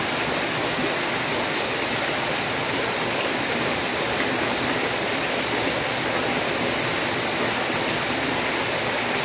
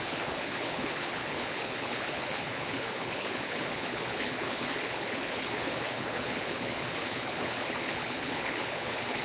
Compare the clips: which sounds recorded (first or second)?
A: first